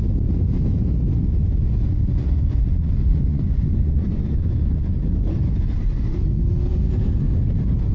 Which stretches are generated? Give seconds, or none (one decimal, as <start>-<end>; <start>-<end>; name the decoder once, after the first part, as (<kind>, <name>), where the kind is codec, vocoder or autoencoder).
2.2-5.0 (vocoder, Vocos)